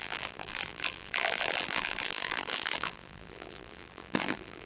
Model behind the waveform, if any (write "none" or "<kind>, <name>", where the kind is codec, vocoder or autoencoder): vocoder, BigVGAN v2